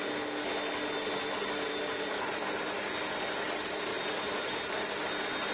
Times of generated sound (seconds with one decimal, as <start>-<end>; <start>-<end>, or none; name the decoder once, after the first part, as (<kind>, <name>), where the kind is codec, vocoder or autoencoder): none